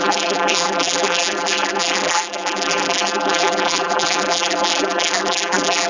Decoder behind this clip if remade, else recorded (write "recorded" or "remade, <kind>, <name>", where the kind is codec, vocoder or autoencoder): remade, vocoder, BigVGAN v2